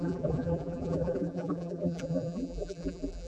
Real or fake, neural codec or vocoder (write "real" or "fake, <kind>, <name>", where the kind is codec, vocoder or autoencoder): fake, vocoder, BigVGAN v2